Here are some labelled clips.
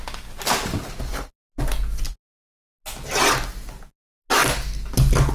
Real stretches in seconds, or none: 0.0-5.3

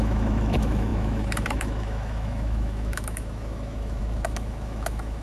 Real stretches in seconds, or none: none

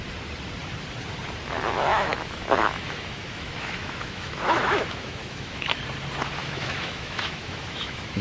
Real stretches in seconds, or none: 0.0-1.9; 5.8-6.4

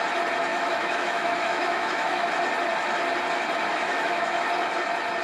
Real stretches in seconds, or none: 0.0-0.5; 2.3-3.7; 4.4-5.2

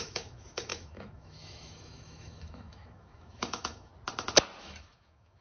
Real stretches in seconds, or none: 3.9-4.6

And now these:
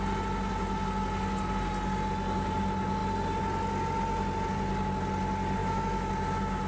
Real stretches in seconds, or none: 0.0-5.6; 6.1-6.7

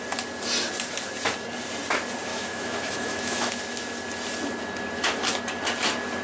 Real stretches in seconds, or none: 0.0-2.3; 3.6-6.2